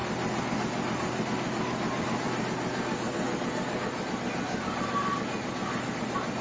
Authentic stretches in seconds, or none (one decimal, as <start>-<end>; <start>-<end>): 0.0-6.4